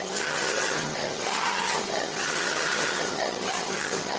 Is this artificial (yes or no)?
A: yes